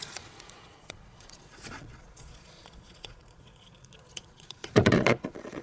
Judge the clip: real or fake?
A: fake